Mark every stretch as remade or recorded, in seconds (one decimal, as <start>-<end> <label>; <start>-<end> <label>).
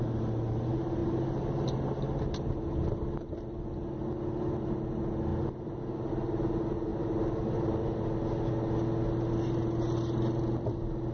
0.0-11.1 recorded